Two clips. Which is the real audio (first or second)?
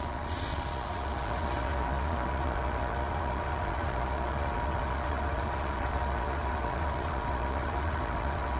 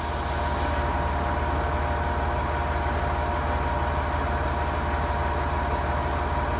second